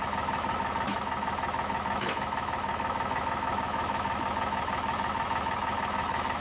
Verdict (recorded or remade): remade